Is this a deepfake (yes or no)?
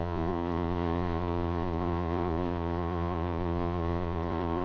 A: yes